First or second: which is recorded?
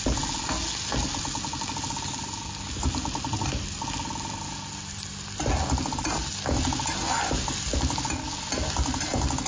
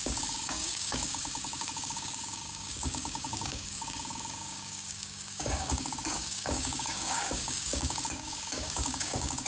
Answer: first